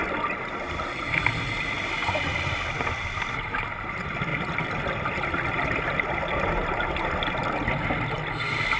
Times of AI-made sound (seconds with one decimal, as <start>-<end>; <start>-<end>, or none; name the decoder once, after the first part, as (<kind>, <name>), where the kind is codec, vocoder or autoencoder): 2.0-2.6 (vocoder, BigVGAN v2); 4.3-5.9